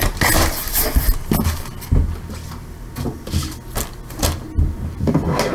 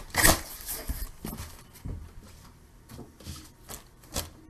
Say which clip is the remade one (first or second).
second